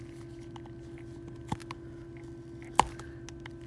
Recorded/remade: recorded